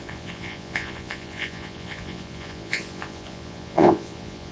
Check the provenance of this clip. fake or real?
fake